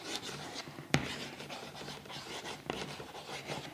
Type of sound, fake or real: fake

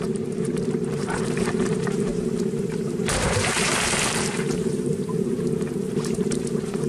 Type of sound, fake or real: fake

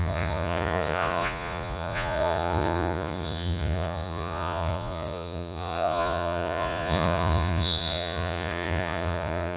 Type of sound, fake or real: fake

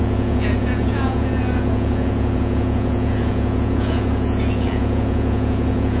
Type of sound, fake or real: fake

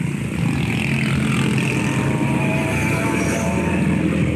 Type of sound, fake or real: real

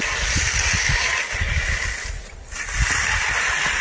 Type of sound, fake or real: real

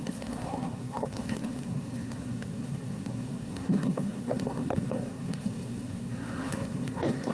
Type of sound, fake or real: fake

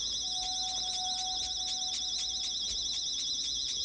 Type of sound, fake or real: real